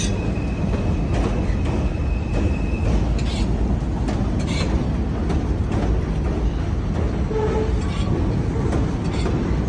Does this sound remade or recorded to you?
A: recorded